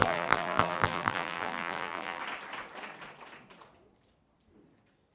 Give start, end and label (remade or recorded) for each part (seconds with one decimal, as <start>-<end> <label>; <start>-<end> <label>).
0.0-2.2 remade; 2.2-5.1 recorded